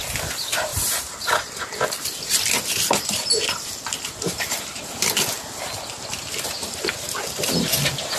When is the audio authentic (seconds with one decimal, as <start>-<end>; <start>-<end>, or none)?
0.0-0.7; 5.0-8.2